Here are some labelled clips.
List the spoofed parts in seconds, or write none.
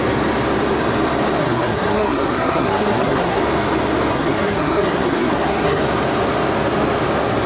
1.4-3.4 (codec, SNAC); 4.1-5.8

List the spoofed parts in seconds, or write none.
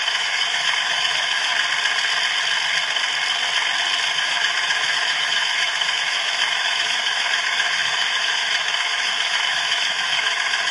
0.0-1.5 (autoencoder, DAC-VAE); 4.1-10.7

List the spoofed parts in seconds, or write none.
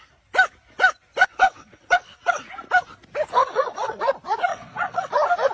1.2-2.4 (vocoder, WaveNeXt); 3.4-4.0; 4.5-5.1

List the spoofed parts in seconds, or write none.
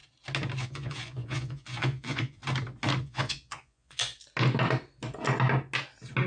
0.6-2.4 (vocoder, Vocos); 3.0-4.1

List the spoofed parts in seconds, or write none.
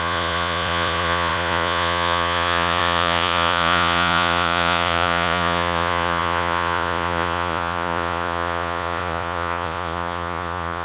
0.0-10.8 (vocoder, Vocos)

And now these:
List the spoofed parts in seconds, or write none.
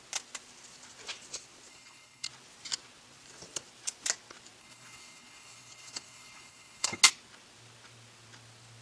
1.7-2.3 (codec, HILCodec); 4.6-7.0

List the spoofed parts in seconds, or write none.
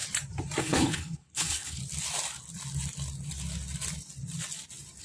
0.6-1.8 (codec, HILCodec)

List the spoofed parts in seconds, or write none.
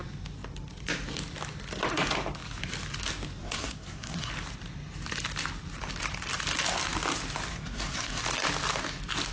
3.4-4.3 (codec, SNAC); 7.5-8.2